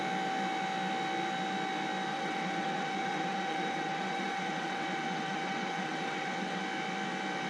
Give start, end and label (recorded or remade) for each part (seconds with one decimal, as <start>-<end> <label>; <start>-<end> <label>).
0.0-2.1 recorded; 2.1-6.6 remade; 6.6-7.5 recorded